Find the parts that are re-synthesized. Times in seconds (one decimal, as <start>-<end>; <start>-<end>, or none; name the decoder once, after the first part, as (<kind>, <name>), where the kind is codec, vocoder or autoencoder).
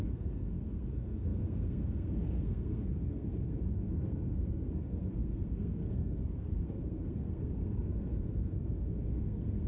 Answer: 0.0-9.7 (codec, SNAC)